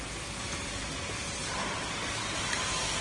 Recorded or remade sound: recorded